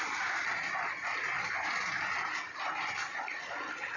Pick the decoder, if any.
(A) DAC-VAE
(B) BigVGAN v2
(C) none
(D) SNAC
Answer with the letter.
C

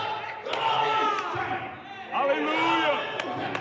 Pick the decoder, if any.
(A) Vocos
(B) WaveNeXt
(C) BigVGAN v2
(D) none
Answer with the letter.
D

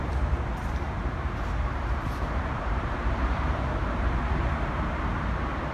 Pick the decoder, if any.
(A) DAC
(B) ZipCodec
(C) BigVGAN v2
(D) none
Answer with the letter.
C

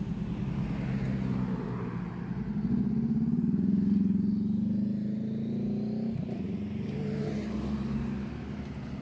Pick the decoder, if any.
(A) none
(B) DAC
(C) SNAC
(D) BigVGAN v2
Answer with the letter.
A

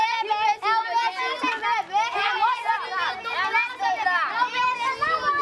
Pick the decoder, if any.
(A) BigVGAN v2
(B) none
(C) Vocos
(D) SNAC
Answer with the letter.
B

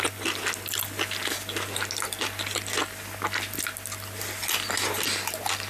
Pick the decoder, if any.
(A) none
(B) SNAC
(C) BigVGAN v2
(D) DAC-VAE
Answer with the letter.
A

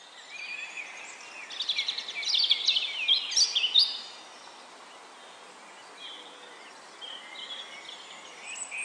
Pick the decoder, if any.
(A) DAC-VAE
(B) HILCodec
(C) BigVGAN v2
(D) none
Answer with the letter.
D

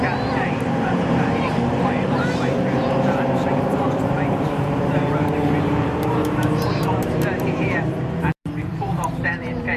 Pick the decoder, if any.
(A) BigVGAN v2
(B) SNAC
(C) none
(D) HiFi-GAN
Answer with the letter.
A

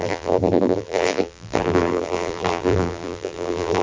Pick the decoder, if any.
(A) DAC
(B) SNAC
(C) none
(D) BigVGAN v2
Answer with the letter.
D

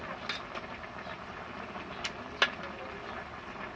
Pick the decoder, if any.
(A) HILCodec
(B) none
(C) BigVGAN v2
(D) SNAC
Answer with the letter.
B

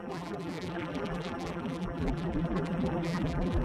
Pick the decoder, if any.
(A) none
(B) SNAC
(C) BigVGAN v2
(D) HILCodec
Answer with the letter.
C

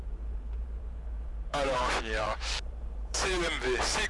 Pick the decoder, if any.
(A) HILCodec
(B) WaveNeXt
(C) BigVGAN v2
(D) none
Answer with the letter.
C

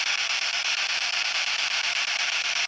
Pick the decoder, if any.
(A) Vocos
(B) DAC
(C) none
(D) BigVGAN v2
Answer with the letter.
D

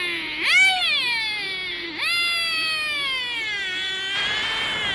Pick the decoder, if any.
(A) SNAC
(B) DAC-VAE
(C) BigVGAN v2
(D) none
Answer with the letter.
D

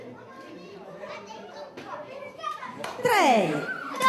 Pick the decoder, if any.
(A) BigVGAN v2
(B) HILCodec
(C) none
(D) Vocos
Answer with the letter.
A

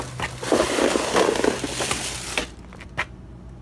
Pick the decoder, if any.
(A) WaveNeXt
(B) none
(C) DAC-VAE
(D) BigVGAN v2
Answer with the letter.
B